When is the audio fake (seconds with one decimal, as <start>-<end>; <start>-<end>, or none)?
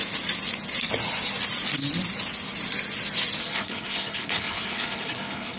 3.4-5.6